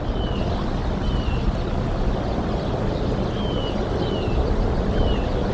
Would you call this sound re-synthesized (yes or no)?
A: no